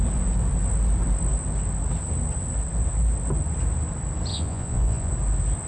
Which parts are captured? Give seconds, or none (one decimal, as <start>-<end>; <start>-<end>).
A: 0.0-4.3; 5.1-5.7